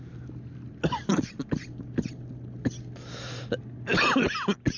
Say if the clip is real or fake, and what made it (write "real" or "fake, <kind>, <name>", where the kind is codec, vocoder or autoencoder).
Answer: real